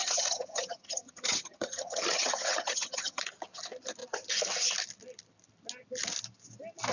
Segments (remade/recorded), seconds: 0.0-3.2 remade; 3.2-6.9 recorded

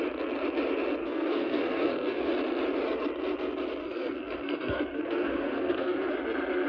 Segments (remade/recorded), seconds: 0.0-1.0 recorded; 1.0-2.3 remade; 2.3-3.8 recorded; 3.8-6.1 remade; 6.1-6.7 recorded

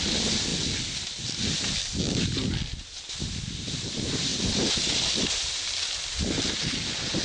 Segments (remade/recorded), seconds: 0.0-7.2 recorded

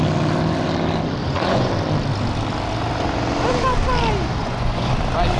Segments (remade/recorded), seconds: 0.0-1.2 recorded; 1.2-1.7 remade; 1.7-4.4 recorded; 4.4-4.9 remade; 4.9-5.4 recorded

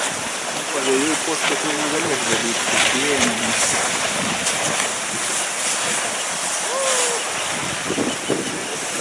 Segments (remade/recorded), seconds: 0.0-9.0 recorded